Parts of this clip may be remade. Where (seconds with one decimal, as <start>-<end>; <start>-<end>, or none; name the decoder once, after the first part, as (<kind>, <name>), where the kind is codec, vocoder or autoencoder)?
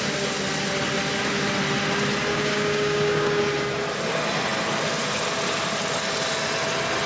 2.3-3.4 (codec, DAC)